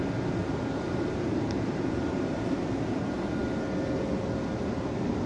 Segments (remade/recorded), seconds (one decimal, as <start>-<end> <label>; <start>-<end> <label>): 0.0-0.4 recorded; 0.4-3.0 remade; 3.0-5.3 recorded